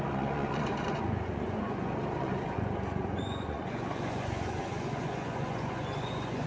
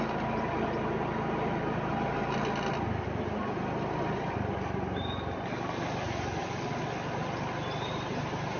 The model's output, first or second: first